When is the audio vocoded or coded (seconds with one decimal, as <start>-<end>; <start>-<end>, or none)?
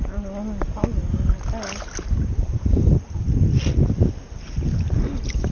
none